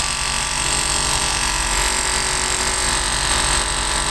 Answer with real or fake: real